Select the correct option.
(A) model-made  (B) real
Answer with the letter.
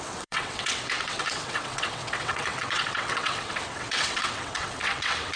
A